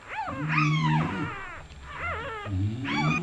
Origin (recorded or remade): recorded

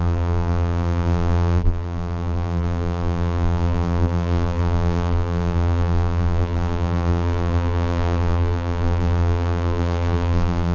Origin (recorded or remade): remade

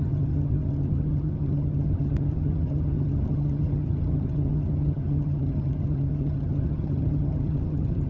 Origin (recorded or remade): remade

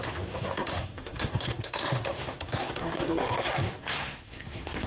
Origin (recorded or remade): remade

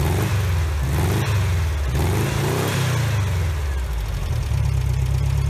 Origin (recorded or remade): recorded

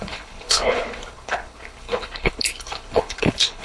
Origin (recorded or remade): remade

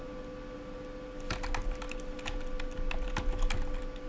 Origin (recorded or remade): recorded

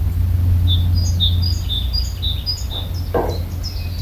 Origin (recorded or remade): recorded